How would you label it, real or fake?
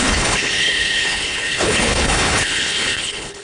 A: fake